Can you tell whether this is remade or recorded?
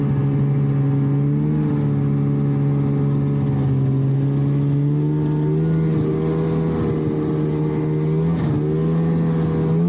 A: recorded